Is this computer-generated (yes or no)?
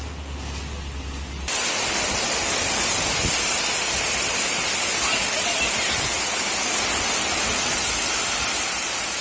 no